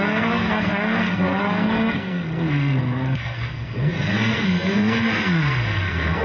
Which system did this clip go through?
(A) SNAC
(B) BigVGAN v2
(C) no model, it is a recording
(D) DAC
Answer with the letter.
A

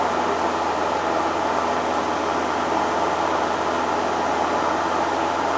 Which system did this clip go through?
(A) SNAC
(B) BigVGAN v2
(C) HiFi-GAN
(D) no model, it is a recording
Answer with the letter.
D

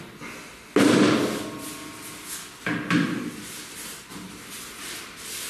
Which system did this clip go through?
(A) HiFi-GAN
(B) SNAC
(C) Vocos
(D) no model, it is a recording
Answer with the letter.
D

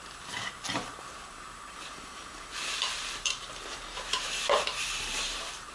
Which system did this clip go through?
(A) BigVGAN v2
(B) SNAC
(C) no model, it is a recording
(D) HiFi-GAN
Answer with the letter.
A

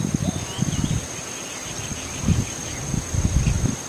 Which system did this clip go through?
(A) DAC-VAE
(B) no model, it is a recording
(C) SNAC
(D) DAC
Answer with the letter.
B